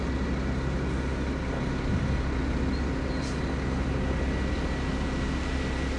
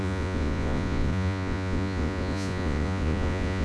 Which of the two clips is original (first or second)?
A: first